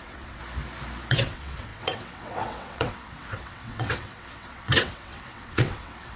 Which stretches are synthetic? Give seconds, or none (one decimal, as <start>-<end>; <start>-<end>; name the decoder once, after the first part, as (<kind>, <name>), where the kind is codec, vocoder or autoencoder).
0.0-0.4 (vocoder, WaveNeXt); 1.1-6.2